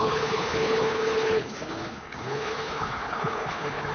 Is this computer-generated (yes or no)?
yes